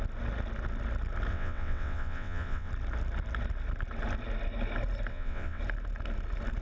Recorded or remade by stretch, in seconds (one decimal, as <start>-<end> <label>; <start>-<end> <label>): 0.0-1.3 recorded; 1.3-2.7 remade; 2.7-5.1 recorded; 5.1-5.6 remade; 5.6-6.6 recorded